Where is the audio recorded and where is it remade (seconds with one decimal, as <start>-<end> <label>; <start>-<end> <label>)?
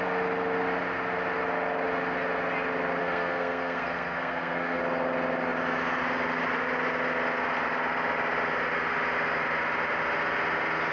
0.0-3.0 recorded; 3.0-4.8 remade; 4.8-10.9 recorded